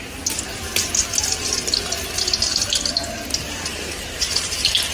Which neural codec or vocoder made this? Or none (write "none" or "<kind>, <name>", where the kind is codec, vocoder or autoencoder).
none